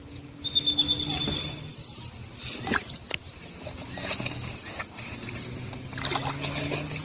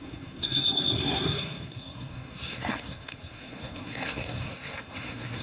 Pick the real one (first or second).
first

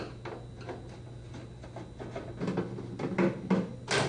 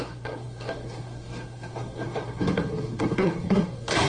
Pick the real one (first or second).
first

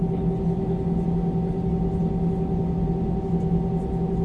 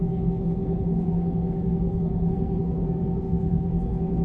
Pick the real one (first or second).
first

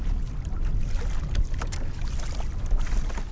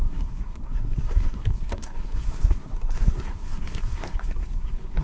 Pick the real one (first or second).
first